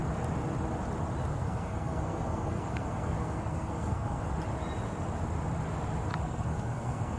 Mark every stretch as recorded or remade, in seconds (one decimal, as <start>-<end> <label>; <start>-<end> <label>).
0.0-1.3 recorded; 1.3-4.3 remade; 4.3-6.1 recorded; 6.1-7.2 remade